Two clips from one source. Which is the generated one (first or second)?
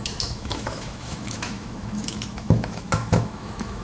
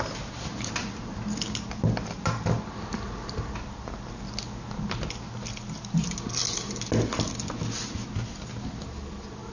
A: first